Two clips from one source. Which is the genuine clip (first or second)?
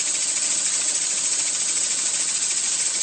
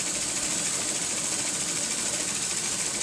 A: second